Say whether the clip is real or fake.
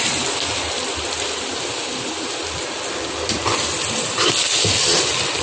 real